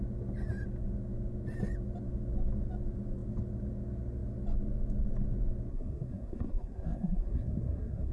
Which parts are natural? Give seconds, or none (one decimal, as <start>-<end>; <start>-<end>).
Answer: 0.0-5.7